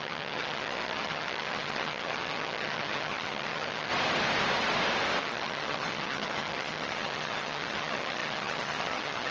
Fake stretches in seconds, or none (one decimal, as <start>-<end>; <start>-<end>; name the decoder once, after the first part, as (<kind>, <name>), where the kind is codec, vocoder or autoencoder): 0.0-3.9 (vocoder, HiFi-GAN); 5.2-9.3